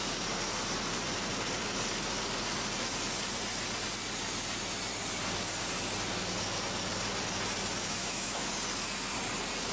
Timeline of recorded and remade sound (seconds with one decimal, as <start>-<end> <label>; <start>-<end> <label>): 0.0-8.0 recorded; 8.0-8.5 remade; 8.5-9.7 recorded